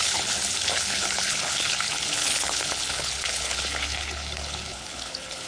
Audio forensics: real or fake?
fake